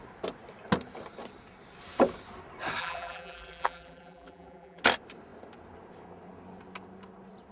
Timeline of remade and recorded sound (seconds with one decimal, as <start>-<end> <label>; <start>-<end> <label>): 0.0-2.8 recorded; 2.8-4.8 remade; 4.8-7.5 recorded